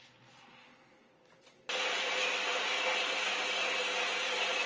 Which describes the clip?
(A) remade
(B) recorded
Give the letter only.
B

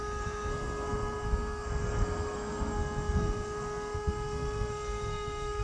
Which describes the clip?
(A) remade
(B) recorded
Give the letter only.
A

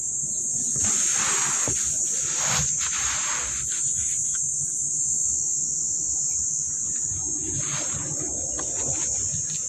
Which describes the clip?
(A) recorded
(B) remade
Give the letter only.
A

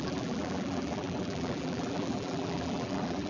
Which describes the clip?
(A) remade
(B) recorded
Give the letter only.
A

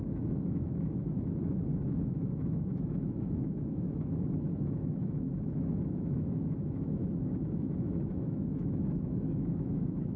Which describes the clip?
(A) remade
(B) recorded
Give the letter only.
A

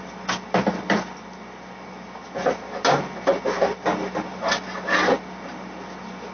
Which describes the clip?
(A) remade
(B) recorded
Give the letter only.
B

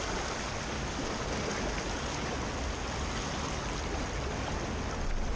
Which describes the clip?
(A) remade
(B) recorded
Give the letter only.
B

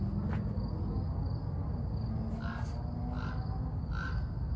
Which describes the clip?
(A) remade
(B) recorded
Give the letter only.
B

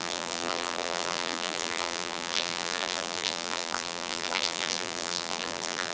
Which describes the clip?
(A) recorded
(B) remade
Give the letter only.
B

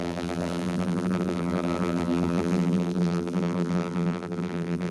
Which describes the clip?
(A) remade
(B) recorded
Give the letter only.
A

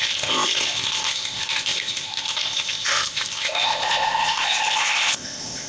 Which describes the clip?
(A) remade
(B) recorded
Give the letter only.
A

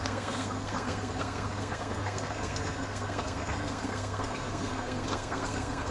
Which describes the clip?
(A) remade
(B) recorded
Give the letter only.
A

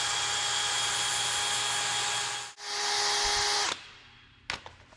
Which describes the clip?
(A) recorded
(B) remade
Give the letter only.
A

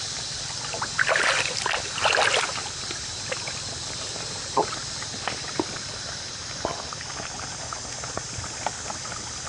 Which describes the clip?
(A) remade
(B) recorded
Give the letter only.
B